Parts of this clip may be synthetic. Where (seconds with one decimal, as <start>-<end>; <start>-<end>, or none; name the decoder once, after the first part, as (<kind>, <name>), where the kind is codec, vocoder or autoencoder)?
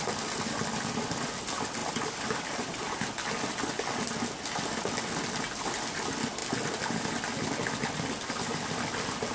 none